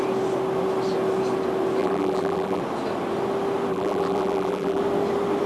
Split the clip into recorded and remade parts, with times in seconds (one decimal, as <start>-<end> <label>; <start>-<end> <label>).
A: 0.0-1.8 recorded; 1.8-2.6 remade; 2.6-3.7 recorded; 3.7-4.8 remade; 4.8-5.5 recorded